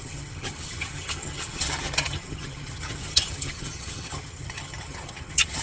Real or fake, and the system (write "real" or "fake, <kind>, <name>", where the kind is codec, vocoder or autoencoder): fake, vocoder, HiFi-GAN